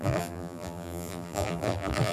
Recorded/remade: remade